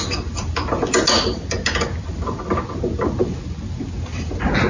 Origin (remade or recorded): recorded